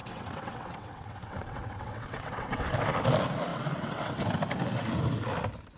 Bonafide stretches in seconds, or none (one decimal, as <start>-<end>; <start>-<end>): 2.6-3.5; 4.4-5.8